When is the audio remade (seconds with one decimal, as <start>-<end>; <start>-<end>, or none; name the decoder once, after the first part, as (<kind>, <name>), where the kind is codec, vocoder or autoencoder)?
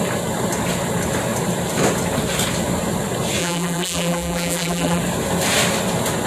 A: 3.4-5.0 (vocoder, BigVGAN v2)